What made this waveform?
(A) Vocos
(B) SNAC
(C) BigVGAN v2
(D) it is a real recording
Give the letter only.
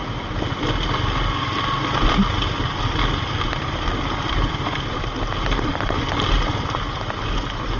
D